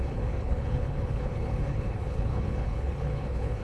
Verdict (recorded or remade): remade